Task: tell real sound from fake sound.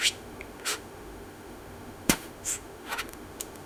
fake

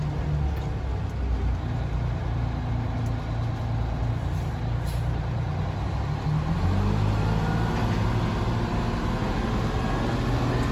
real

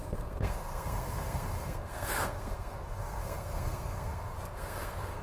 fake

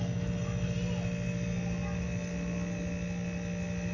real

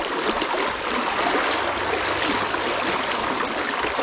real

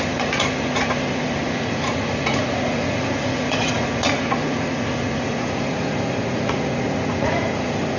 fake